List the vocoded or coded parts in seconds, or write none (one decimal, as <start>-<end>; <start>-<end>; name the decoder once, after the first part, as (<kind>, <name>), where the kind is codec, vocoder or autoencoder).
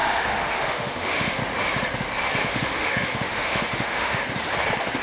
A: 0.0-1.4 (autoencoder, DAC-VAE); 2.4-4.2